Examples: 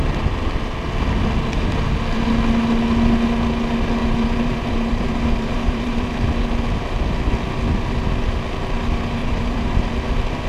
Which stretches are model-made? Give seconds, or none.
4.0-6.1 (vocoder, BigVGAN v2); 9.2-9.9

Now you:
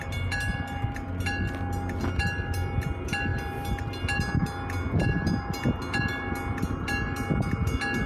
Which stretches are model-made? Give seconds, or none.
none

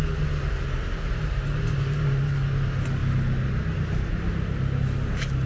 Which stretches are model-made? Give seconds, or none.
3.0-4.1 (vocoder, BigVGAN v2)

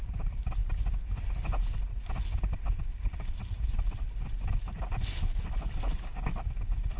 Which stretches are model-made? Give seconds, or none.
none

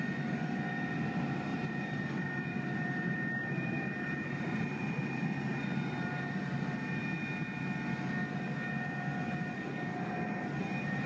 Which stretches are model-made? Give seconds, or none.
1.5-6.3 (vocoder, BigVGAN v2)

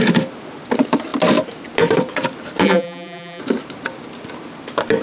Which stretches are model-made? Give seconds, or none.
2.6-3.4 (vocoder, BigVGAN v2)

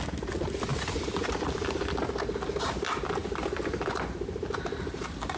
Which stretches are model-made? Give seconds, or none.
0.7-1.8 (vocoder, BigVGAN v2); 3.2-5.4